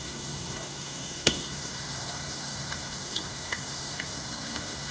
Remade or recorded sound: remade